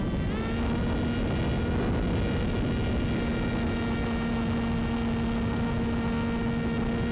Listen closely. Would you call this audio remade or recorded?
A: recorded